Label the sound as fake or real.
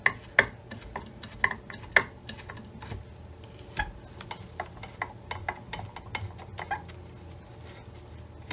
real